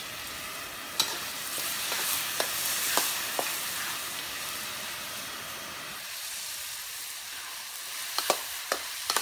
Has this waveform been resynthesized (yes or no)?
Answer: no